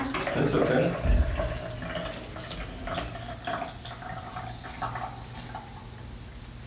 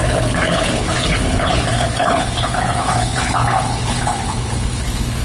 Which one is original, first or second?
first